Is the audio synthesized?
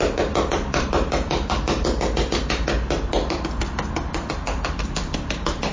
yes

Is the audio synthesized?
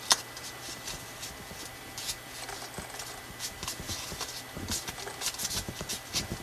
no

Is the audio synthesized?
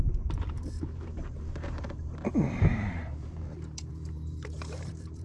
yes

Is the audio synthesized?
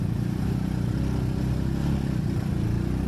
no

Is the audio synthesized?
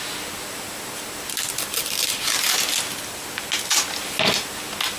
no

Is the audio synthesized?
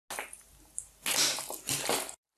no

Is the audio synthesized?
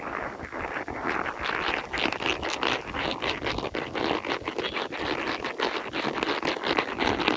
no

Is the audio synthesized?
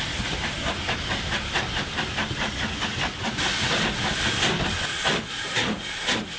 no